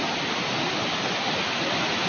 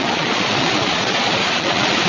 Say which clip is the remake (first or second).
second